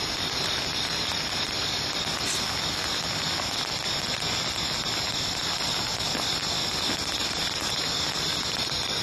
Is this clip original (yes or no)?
yes